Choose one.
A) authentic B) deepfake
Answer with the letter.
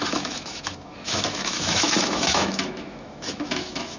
B